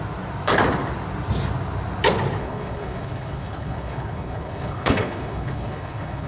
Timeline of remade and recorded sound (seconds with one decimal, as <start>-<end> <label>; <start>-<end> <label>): 0.0-2.4 recorded; 2.4-6.3 remade